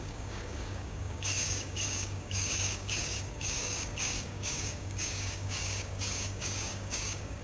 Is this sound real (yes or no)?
no